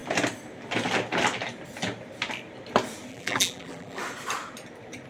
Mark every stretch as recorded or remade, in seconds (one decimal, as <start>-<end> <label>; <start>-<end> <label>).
0.0-3.1 recorded; 3.1-4.0 remade; 4.0-5.1 recorded